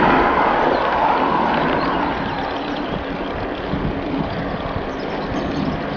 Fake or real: real